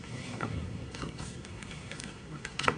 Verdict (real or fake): fake